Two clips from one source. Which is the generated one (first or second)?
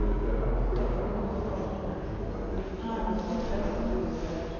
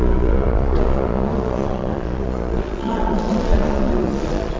second